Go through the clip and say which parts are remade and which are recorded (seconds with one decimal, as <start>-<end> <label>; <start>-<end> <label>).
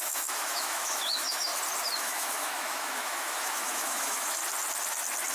0.0-1.5 remade; 1.5-2.0 recorded; 2.0-4.4 remade; 4.4-5.3 recorded